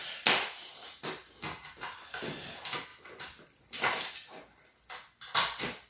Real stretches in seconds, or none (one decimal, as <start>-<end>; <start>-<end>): 0.0-5.9